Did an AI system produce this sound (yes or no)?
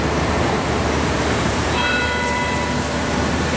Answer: yes